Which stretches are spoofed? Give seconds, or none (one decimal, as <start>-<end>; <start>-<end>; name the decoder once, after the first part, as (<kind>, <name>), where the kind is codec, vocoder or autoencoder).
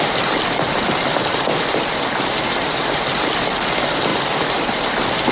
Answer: none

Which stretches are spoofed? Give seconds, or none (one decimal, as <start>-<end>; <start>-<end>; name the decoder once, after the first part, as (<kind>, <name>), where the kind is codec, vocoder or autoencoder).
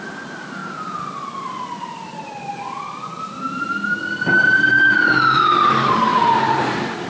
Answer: 0.0-7.1 (vocoder, BigVGAN v2)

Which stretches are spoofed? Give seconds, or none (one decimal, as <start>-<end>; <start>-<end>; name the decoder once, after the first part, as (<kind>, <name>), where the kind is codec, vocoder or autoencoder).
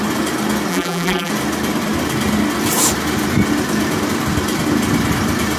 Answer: 0.7-1.3 (vocoder, BigVGAN v2)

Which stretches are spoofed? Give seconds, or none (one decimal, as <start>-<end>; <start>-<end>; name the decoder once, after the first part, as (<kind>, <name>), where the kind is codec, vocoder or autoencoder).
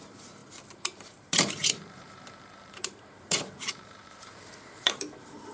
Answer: 0.0-5.5 (vocoder, BigVGAN v2)